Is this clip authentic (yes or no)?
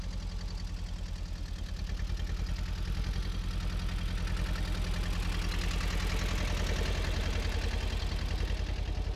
yes